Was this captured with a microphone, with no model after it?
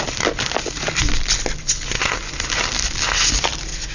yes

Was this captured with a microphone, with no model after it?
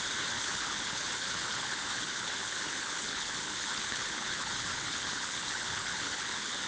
no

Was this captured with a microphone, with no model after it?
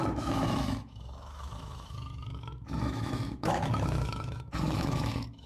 no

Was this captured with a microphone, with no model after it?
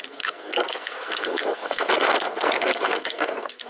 no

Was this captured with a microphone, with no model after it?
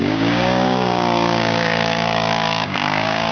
no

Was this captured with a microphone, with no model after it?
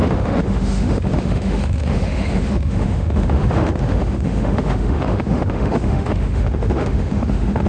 no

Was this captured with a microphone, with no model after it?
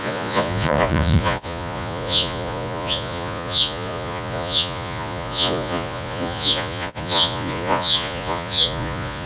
no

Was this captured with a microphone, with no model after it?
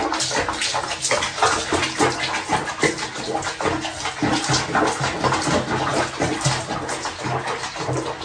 yes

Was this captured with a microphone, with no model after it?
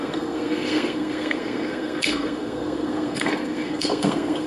no